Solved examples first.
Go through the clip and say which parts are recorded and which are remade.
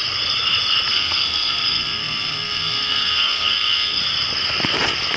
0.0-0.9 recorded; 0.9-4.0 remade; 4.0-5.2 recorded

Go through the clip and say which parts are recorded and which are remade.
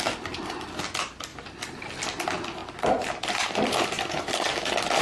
0.0-2.6 recorded; 2.6-4.3 remade; 4.3-5.0 recorded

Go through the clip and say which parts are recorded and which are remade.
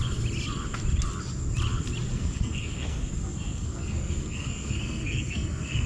0.0-2.1 recorded; 2.1-5.9 remade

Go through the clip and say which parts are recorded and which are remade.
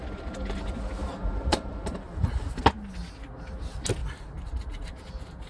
0.0-1.0 recorded; 1.0-2.6 remade; 2.6-4.0 recorded; 4.0-5.1 remade; 5.1-5.5 recorded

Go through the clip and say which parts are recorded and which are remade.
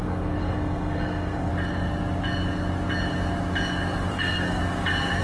0.0-1.5 remade; 1.5-4.1 recorded; 4.1-4.6 remade; 4.6-5.2 recorded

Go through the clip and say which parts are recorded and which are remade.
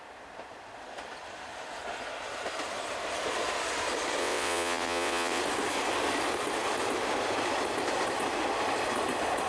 0.0-4.2 recorded; 4.2-5.4 remade; 5.4-9.5 recorded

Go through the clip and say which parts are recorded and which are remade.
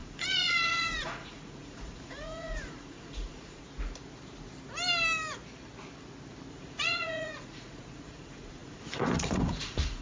0.0-3.6 remade; 3.6-6.5 recorded; 6.5-10.0 remade